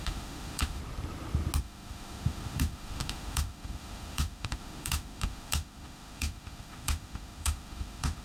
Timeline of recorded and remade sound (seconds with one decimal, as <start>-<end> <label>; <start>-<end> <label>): 0.0-0.8 remade; 0.8-1.6 recorded; 1.6-8.2 remade